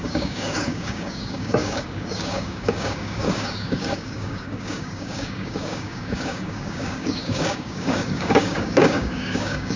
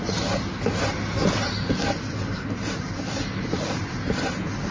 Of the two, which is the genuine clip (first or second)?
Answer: second